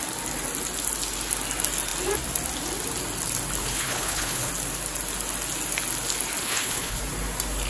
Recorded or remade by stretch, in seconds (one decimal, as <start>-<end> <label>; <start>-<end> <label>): 0.0-3.6 recorded; 3.6-4.5 remade; 4.5-6.4 recorded; 6.4-7.0 remade; 7.0-7.7 recorded